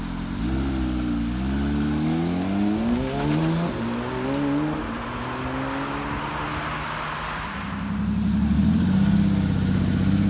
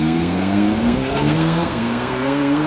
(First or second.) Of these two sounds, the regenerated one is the second